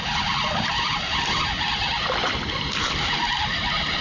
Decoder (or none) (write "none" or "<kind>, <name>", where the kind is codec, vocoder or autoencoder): none